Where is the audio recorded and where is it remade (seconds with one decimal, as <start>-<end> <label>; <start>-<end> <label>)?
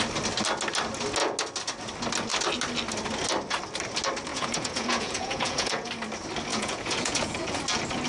0.0-4.3 recorded; 4.3-5.9 remade; 5.9-6.5 recorded; 6.5-7.6 remade; 7.6-8.1 recorded